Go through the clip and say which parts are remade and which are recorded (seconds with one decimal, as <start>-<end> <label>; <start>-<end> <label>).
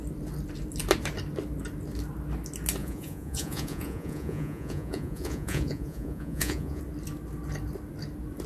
0.0-2.8 recorded; 2.8-6.8 remade; 6.8-8.5 recorded